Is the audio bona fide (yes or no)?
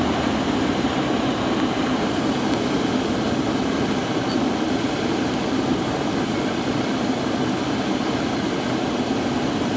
yes